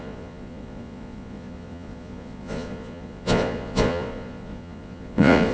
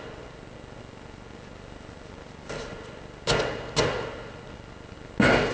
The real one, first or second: second